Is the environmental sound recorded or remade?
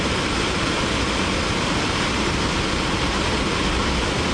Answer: recorded